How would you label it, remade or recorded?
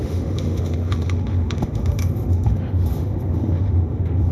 remade